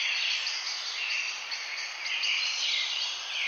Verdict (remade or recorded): recorded